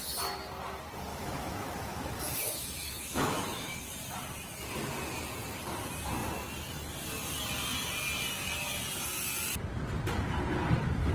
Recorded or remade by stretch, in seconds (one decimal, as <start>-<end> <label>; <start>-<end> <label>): 0.0-1.1 recorded; 1.1-3.8 remade; 3.8-11.1 recorded